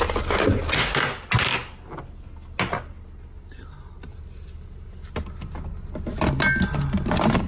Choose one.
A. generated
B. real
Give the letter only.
B